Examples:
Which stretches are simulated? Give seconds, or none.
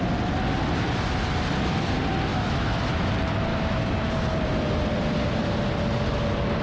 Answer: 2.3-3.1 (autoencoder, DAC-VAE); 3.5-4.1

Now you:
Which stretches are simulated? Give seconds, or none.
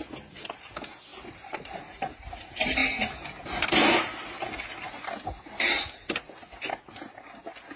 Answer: 1.1-2.3 (vocoder, BigVGAN v2)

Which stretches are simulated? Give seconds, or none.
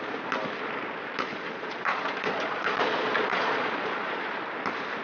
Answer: 1.3-4.3 (vocoder, Vocos)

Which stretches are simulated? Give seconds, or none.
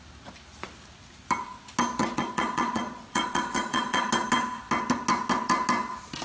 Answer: 2.0-4.1 (vocoder, Vocos)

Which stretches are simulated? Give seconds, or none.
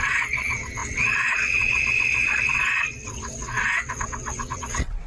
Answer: 0.0-5.1 (vocoder, WaveNeXt)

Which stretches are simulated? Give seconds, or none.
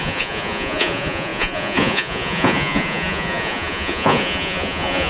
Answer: 0.0-5.1 (vocoder, Vocos)